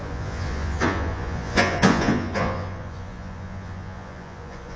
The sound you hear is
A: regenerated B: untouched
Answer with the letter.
A